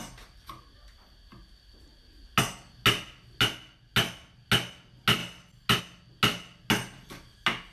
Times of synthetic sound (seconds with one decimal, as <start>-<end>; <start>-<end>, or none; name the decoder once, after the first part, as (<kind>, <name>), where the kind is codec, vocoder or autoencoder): none